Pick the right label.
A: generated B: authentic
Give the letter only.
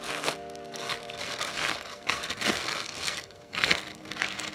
A